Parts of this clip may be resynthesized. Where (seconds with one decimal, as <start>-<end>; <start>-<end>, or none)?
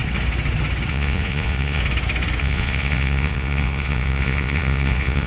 0.9-1.8; 2.4-5.3